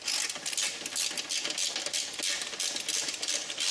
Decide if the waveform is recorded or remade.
recorded